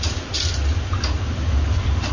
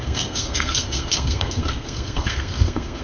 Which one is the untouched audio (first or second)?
first